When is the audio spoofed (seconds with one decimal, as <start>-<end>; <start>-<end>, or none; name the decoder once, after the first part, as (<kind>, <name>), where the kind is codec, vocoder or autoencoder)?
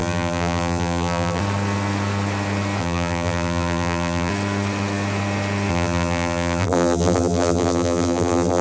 0.0-1.4 (vocoder, BigVGAN v2); 2.8-4.3; 5.7-8.6